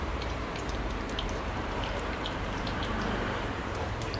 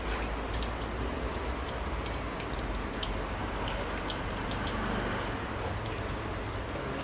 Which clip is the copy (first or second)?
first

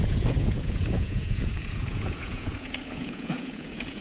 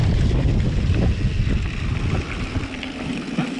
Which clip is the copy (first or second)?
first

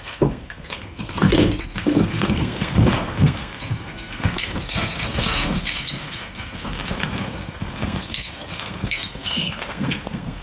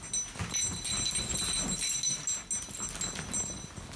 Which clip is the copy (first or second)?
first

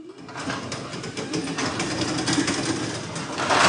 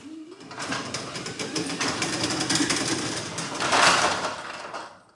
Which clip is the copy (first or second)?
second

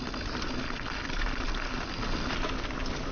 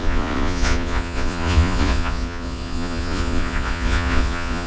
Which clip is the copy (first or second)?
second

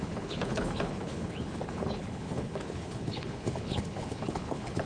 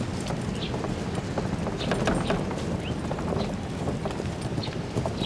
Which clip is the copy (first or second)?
first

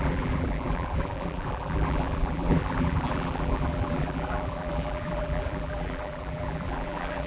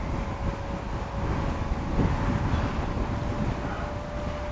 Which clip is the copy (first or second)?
first